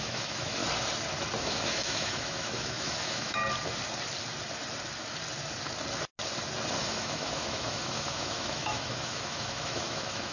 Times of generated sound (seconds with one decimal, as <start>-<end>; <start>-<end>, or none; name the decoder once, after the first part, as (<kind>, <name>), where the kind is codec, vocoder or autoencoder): 0.0-0.6 (autoencoder, DAC-VAE); 1.4-3.4; 6.8-10.3